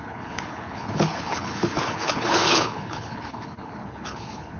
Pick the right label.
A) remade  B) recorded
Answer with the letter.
A